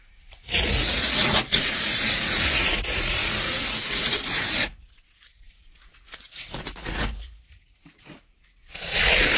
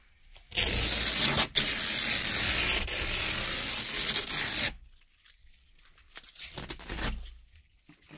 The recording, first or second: second